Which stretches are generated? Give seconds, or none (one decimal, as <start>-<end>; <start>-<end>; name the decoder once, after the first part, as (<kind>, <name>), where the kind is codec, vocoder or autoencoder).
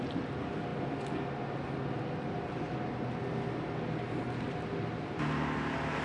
none